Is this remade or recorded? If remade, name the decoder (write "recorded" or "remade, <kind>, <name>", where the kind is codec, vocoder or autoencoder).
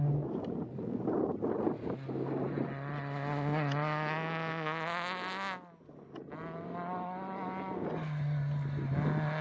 recorded